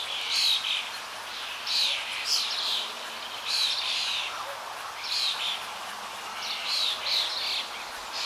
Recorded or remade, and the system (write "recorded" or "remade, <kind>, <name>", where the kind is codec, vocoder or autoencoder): recorded